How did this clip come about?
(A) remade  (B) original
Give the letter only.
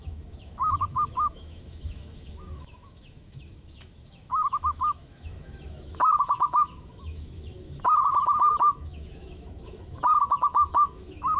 A